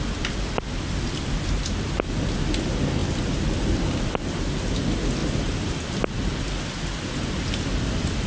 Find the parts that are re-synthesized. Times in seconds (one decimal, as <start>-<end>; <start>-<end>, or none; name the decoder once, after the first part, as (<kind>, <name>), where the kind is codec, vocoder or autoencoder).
none